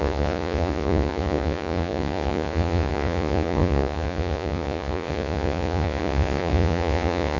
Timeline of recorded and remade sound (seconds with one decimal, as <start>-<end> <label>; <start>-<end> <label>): 0.0-7.4 remade